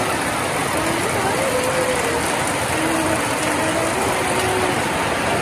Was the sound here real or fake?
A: real